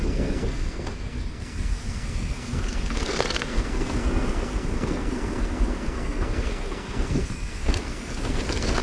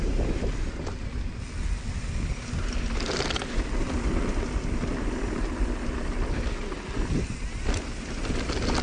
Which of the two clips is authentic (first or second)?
second